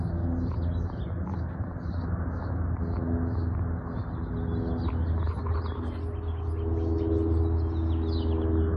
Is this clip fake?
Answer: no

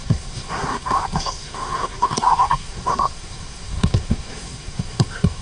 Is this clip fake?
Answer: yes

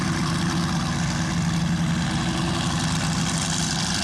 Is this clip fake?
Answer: no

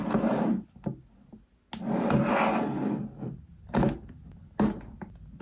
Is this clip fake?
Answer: no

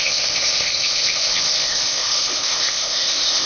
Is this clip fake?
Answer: yes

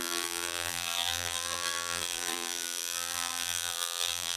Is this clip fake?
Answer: yes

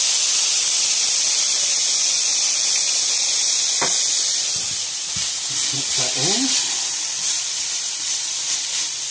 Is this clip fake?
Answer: no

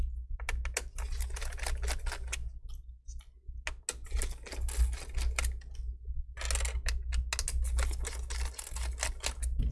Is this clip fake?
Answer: no